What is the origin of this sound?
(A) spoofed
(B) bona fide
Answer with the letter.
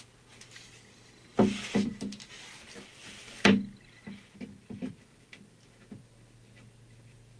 B